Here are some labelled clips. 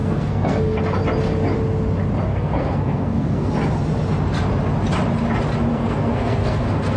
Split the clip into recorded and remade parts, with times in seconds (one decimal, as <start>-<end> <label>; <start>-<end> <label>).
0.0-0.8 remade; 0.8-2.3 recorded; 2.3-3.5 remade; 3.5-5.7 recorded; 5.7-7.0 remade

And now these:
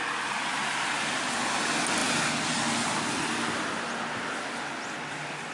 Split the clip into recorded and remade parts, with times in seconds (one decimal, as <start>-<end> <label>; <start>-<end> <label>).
0.0-5.5 recorded

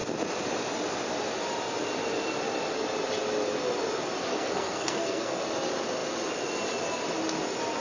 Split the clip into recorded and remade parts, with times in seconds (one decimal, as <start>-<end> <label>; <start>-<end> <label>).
0.0-4.3 recorded; 4.3-5.4 remade; 5.4-7.8 recorded

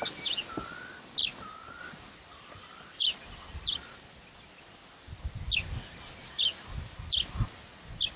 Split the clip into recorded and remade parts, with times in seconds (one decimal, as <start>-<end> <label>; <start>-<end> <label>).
0.0-8.2 recorded

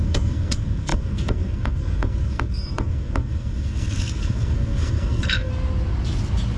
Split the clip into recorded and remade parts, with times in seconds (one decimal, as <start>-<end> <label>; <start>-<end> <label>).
0.0-5.5 remade; 5.5-6.6 recorded